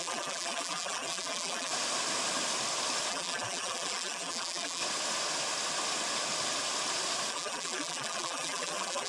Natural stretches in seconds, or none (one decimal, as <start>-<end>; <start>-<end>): 1.7-3.1; 4.8-7.3